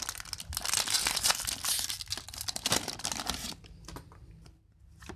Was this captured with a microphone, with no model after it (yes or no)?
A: yes